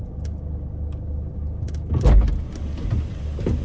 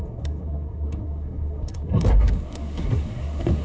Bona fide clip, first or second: first